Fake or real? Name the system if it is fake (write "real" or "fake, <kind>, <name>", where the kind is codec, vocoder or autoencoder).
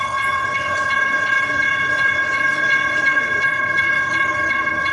fake, codec, HILCodec